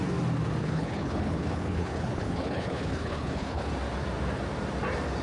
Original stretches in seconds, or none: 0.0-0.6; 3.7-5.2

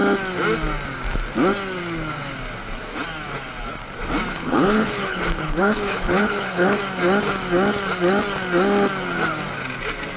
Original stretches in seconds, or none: 0.0-4.3; 6.8-10.2

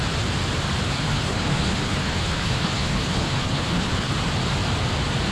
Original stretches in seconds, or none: 0.0-0.9; 4.1-5.3

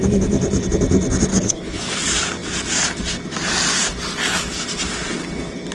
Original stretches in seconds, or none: 0.0-1.3; 2.0-5.7